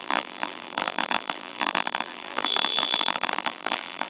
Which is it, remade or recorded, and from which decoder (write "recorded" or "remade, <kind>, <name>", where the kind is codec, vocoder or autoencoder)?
remade, vocoder, BigVGAN v2